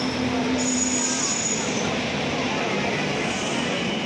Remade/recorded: recorded